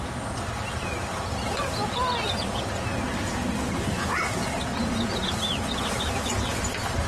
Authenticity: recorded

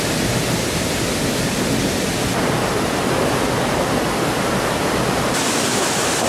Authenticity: recorded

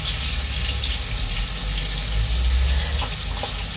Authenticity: recorded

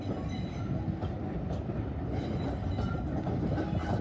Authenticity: recorded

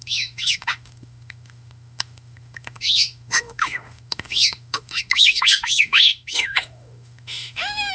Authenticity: remade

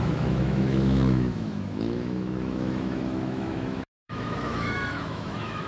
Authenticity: remade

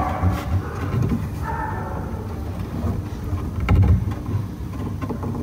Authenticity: recorded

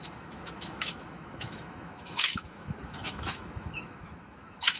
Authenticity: remade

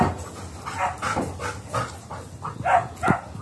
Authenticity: recorded